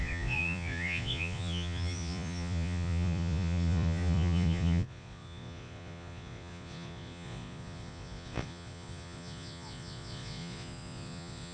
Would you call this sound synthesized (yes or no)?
yes